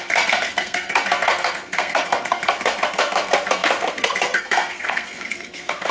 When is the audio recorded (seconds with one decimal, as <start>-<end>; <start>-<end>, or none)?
none